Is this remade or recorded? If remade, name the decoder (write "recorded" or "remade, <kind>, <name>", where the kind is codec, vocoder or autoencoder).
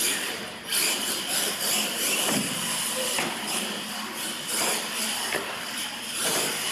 remade, vocoder, BigVGAN v2